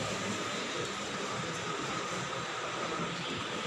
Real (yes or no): no